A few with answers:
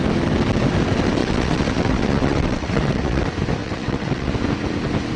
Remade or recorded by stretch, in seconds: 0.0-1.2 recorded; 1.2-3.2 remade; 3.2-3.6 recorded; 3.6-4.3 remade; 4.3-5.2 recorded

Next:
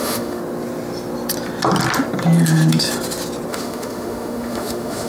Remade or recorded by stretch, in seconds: 0.0-0.4 remade; 0.4-3.5 recorded; 3.5-5.1 remade

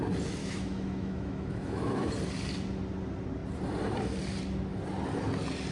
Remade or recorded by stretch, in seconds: 0.0-0.4 recorded; 0.4-2.1 remade; 2.1-5.7 recorded

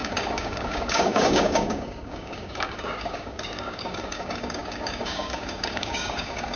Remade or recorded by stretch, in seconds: 0.0-6.6 remade

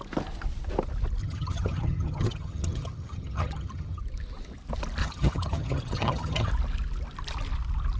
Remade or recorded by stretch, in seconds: 0.0-1.2 recorded; 1.2-4.0 remade; 4.0-5.0 recorded; 5.0-6.5 remade; 6.5-8.0 recorded

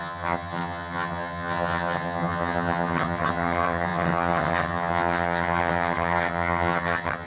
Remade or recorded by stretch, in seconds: 0.0-7.3 remade

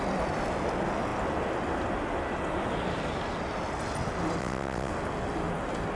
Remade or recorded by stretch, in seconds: 0.0-4.4 recorded; 4.4-4.9 remade; 4.9-6.0 recorded

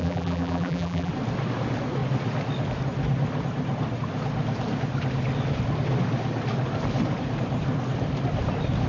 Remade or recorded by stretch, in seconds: 0.0-1.1 remade; 1.1-8.9 recorded